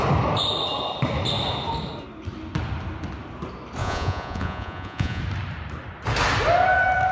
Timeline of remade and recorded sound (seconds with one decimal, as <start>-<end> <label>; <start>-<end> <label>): 0.0-3.8 recorded; 3.8-5.2 remade; 5.2-7.1 recorded